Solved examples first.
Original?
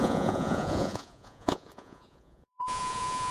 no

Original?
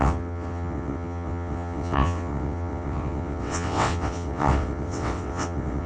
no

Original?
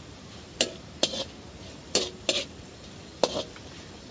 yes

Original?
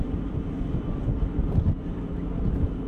yes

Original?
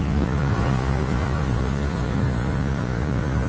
no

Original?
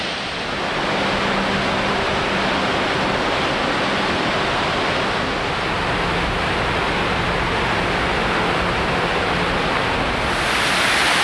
yes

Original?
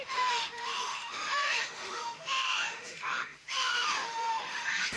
no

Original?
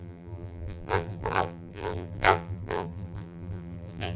no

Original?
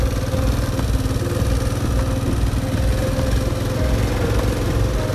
yes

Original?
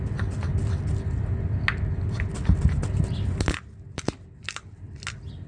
yes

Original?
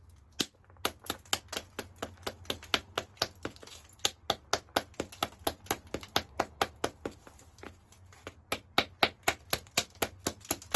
yes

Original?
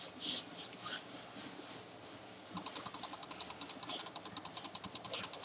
no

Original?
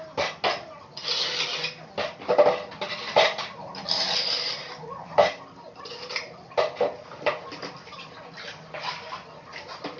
yes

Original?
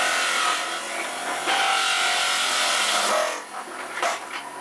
yes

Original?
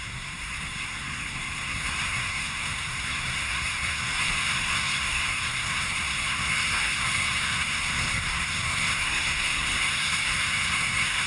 no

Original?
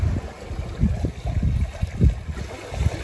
yes